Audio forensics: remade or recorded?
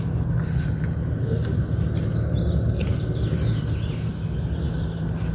recorded